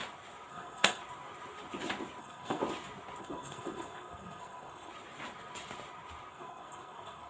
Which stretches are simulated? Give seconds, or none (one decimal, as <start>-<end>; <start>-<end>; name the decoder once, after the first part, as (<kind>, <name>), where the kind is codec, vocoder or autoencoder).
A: 0.5-1.0 (codec, SNAC); 2.2-2.6; 3.2-4.9; 6.3-7.3